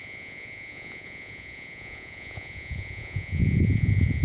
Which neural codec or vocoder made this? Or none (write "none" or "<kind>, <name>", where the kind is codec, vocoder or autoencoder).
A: vocoder, Vocos